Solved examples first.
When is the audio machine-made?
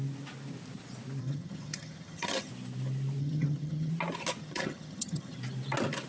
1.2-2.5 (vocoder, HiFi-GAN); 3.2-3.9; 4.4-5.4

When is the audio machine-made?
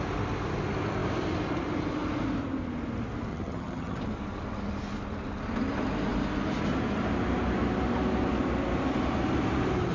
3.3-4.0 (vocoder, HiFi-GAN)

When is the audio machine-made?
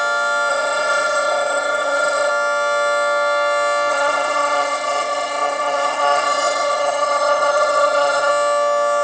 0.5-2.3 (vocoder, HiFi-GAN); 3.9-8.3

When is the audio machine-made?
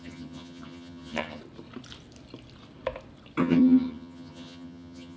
0.0-1.4 (vocoder, HiFi-GAN); 3.4-5.2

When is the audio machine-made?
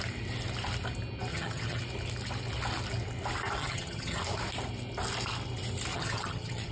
1.3-1.8 (vocoder, HiFi-GAN); 3.6-4.2; 5.9-6.7